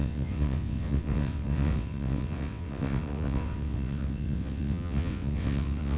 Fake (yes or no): yes